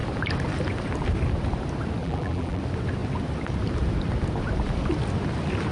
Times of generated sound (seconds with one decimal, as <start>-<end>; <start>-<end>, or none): 2.0-2.6